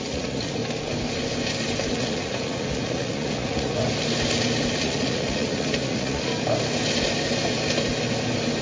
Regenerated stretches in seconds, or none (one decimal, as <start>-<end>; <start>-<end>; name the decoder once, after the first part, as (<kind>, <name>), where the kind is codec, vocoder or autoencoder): 0.0-0.6 (vocoder, Vocos); 1.9-3.8; 4.8-6.3